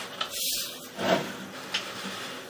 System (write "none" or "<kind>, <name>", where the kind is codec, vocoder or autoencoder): none